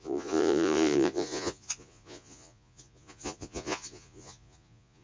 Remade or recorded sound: remade